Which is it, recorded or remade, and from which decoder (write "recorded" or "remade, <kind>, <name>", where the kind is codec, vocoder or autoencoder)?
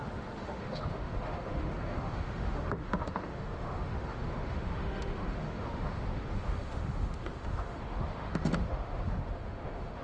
remade, autoencoder, DAC-VAE